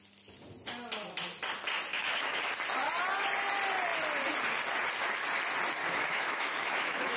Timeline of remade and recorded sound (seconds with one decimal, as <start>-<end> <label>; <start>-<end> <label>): 0.0-1.9 recorded; 1.9-2.5 remade; 2.5-5.8 recorded; 5.8-7.2 remade

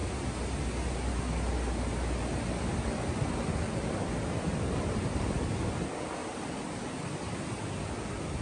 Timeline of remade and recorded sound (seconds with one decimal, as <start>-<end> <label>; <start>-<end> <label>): 0.0-8.4 recorded

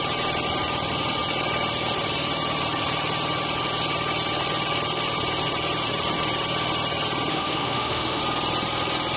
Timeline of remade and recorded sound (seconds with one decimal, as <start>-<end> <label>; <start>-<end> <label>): 0.0-7.3 recorded; 7.3-8.2 remade; 8.2-9.2 recorded

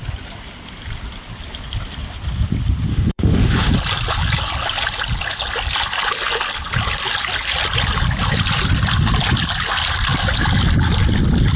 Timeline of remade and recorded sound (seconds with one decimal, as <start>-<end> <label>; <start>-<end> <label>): 0.0-2.9 recorded; 2.9-3.7 remade; 3.7-11.6 recorded

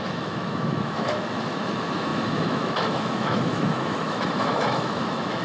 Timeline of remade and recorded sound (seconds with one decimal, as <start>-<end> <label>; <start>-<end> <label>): 0.0-5.4 remade